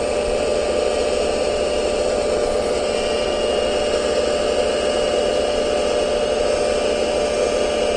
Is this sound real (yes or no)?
yes